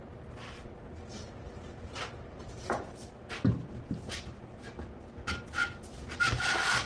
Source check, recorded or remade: recorded